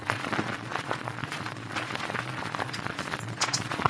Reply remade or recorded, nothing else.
remade